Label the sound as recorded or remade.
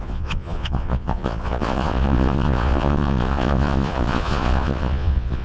remade